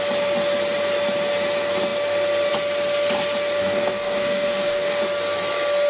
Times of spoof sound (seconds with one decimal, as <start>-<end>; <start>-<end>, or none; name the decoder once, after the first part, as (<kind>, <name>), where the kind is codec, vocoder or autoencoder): 3.6-5.0 (codec, DAC)